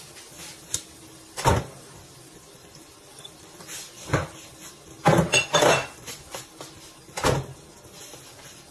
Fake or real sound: real